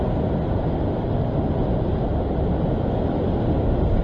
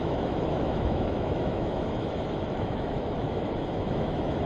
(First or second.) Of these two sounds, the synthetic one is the second